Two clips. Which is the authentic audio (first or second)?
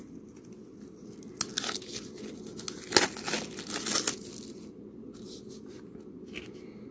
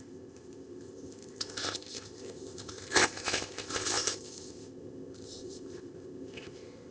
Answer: first